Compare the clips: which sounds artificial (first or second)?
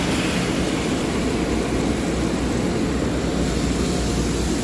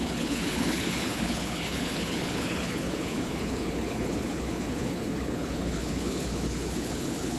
second